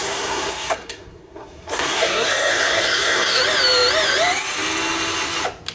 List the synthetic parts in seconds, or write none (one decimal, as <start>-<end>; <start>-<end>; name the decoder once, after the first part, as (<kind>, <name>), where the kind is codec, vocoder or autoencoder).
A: 0.0-3.4 (codec, SNAC)